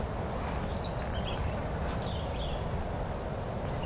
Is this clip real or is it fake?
real